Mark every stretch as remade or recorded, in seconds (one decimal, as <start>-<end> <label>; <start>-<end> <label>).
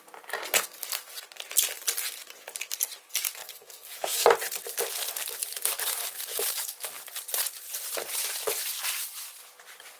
0.0-3.4 recorded; 3.4-4.3 remade; 4.3-6.0 recorded; 6.0-6.9 remade; 6.9-10.0 recorded